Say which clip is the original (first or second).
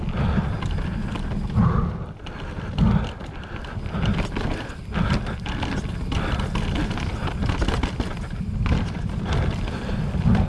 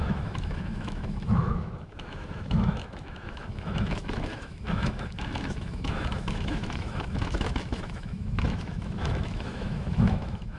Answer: first